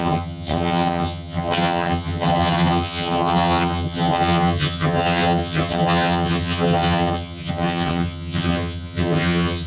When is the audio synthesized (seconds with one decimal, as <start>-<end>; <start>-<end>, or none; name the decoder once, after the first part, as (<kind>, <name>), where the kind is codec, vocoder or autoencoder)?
0.0-9.7 (vocoder, HiFi-GAN)